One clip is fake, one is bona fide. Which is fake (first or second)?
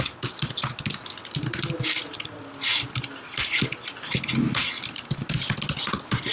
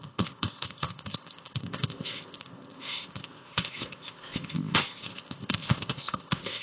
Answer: second